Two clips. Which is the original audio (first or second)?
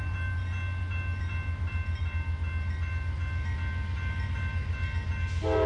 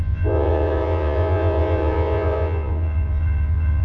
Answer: first